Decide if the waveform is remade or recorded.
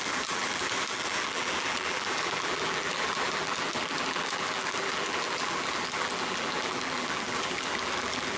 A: remade